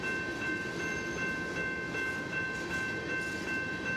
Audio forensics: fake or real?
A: real